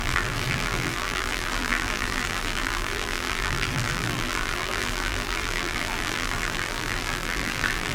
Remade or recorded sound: remade